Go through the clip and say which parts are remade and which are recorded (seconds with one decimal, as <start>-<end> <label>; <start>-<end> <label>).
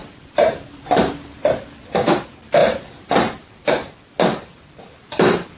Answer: 0.0-1.6 remade; 1.6-5.6 recorded